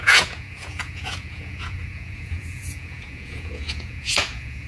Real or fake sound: fake